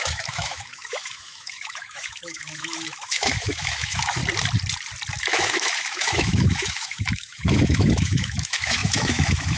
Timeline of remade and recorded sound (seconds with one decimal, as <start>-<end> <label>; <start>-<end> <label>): 0.0-4.2 remade; 4.2-5.1 recorded; 5.1-9.6 remade